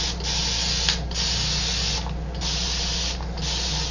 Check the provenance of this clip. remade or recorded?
recorded